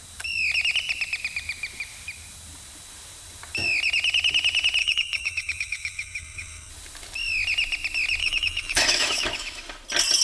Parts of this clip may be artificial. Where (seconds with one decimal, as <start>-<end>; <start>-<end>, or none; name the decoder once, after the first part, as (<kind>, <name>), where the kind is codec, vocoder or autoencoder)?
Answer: 4.8-6.7 (autoencoder, DAC-VAE); 8.2-9.6

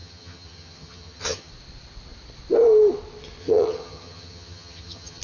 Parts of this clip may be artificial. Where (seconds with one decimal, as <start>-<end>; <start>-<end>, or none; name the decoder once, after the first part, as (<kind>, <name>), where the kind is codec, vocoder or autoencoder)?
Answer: 0.0-1.5 (vocoder, HiFi-GAN); 3.4-5.2

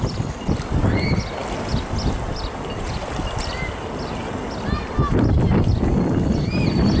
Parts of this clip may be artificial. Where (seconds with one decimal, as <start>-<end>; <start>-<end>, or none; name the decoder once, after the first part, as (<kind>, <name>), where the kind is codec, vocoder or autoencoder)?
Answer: none

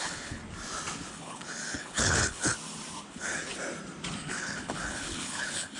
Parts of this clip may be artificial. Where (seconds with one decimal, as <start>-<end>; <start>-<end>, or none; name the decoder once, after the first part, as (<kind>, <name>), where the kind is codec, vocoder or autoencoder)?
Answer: 0.0-0.4 (codec, HILCodec); 1.1-2.5; 3.1-3.5; 4.2-5.8